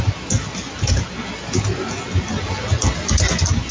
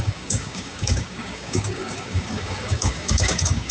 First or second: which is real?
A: first